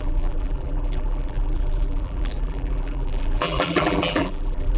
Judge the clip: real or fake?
fake